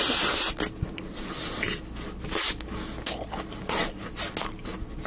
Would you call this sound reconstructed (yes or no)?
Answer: no